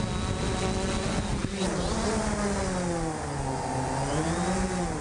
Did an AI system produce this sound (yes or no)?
no